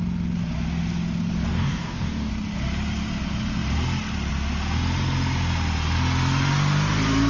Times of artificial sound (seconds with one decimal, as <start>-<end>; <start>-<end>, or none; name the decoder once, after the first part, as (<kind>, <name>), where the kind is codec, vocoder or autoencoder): 1.5-2.3 (codec, DAC)